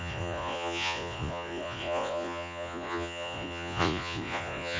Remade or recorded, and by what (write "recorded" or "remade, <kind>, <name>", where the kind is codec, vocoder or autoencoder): remade, vocoder, Vocos